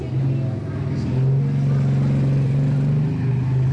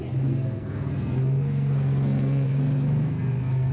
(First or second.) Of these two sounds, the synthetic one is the second